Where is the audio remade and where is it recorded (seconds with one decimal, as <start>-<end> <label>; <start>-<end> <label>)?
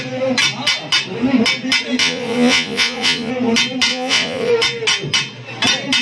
0.0-2.0 recorded; 2.0-3.3 remade; 3.3-3.9 recorded; 3.9-4.5 remade; 4.5-6.0 recorded